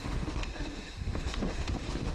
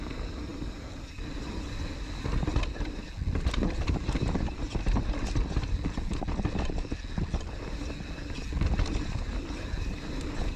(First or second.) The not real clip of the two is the first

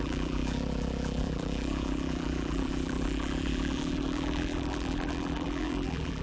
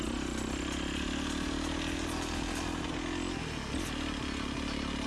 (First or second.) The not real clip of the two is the first